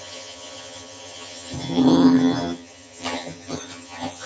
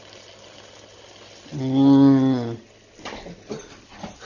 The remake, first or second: first